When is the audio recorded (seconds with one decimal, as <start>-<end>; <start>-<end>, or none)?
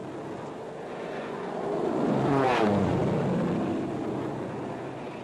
0.0-0.9; 3.0-4.0